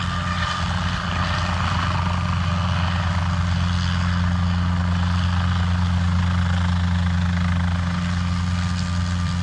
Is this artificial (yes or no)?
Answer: no